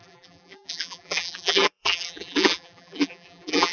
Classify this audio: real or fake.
fake